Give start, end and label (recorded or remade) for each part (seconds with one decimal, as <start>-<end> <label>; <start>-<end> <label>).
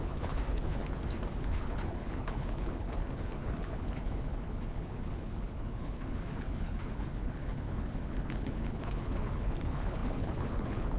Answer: 0.0-0.8 remade; 0.8-1.4 recorded; 1.4-11.0 remade